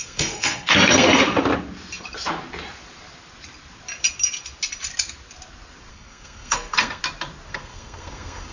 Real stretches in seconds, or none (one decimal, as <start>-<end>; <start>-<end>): 1.2-5.9; 7.0-7.5